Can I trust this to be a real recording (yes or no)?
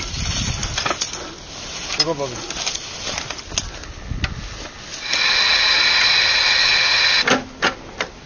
yes